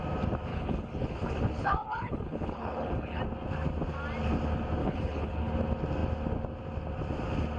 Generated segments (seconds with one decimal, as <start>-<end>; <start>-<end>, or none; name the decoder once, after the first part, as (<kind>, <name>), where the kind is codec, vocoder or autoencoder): 0.5-3.2 (codec, HILCodec); 4.8-5.5